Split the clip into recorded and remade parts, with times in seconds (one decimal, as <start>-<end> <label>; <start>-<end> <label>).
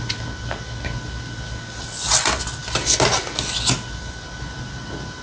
0.0-5.2 recorded